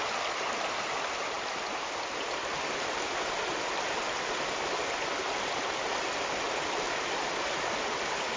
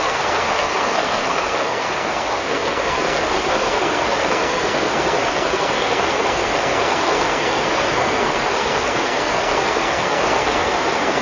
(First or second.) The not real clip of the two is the second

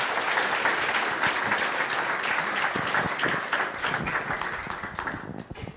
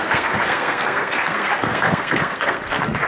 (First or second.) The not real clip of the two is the second